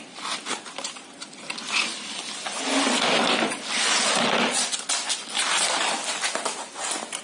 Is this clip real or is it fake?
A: real